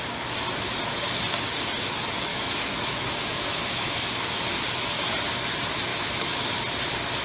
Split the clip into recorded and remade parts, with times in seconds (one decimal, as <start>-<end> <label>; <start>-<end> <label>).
0.0-2.3 recorded; 2.3-4.4 remade; 4.4-5.9 recorded; 5.9-6.5 remade; 6.5-7.2 recorded